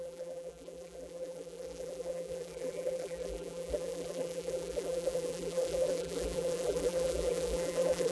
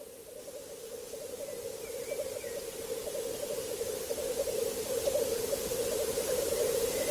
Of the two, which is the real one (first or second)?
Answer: second